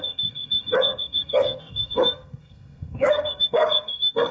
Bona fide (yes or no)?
no